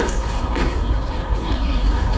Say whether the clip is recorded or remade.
remade